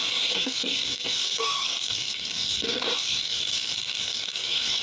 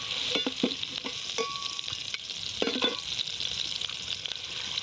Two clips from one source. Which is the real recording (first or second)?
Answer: second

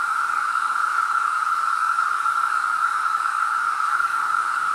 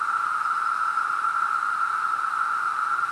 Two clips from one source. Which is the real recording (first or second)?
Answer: second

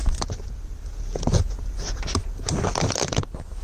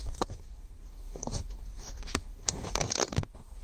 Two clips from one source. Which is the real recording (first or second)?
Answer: first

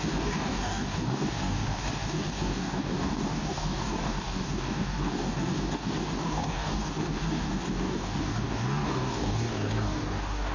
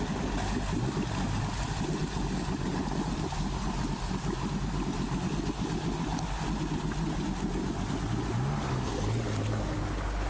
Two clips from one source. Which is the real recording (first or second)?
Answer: second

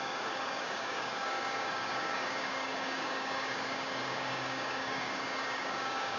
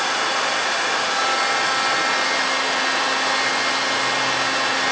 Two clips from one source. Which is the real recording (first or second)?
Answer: second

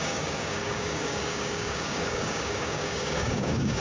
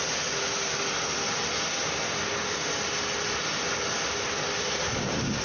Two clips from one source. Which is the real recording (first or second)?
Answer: second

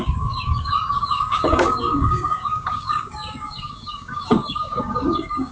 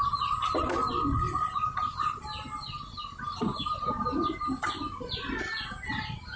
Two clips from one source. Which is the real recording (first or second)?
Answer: second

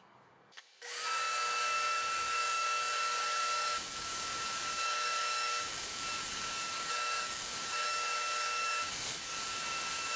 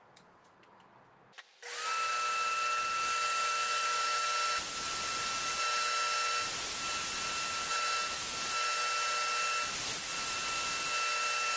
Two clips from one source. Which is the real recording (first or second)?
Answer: second